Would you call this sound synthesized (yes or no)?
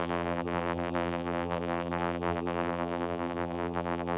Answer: yes